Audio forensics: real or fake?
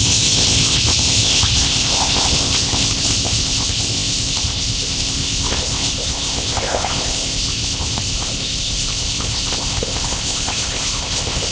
fake